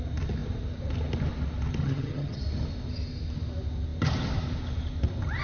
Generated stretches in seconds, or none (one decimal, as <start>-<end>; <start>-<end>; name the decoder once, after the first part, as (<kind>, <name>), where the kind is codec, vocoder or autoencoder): 1.8-2.4 (vocoder, HiFi-GAN)